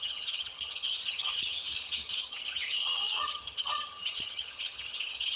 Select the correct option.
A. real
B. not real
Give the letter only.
B